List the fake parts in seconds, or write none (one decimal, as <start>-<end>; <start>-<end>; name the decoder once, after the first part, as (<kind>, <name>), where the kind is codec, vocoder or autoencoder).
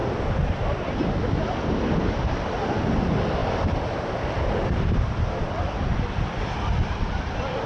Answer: none